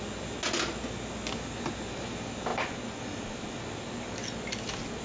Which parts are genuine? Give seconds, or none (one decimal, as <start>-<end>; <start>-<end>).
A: 0.0-5.0